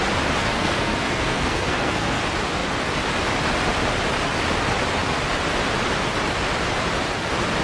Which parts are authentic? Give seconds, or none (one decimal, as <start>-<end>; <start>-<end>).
0.0-0.4; 2.2-7.6